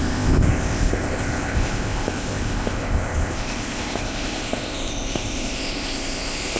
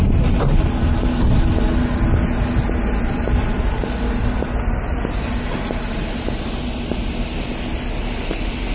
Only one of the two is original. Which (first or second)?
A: second